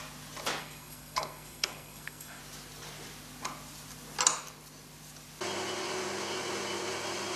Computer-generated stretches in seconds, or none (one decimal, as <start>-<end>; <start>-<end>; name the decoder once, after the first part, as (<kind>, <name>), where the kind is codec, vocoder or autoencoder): 0.6-2.4 (codec, SNAC)